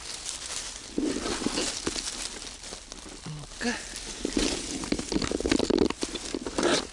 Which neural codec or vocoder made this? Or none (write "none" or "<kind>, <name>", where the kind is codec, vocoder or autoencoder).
none